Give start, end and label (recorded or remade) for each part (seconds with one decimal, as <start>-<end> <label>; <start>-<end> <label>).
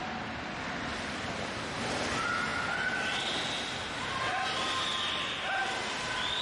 0.0-0.9 recorded; 0.9-1.8 remade; 1.8-5.6 recorded; 5.6-6.4 remade